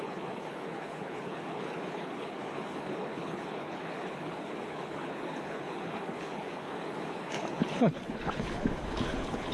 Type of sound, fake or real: fake